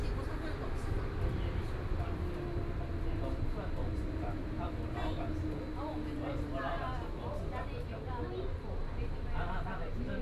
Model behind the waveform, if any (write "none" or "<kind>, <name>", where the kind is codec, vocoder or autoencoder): none